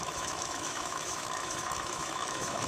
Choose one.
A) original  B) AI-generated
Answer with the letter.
B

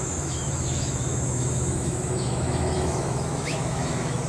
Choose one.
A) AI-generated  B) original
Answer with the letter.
A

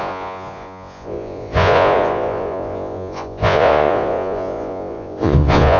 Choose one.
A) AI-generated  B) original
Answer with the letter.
A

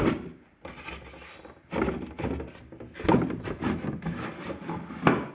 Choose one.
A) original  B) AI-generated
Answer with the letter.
A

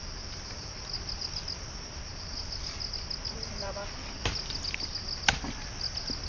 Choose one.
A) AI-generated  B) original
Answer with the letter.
B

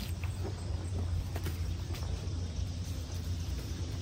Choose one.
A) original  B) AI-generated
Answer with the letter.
B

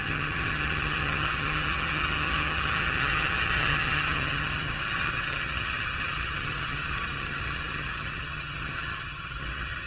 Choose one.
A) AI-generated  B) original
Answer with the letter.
A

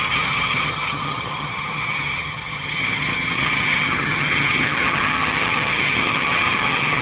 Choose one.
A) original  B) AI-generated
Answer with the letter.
B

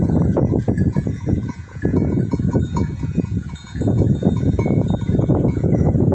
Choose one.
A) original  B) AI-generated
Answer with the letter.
B